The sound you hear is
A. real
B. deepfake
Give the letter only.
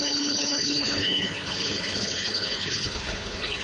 B